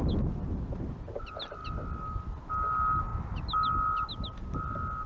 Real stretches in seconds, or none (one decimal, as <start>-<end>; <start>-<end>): 0.0-5.1